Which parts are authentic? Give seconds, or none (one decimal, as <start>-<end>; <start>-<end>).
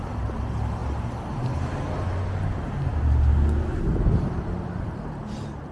0.0-5.7